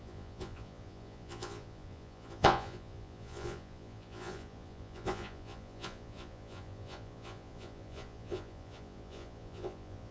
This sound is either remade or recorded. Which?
remade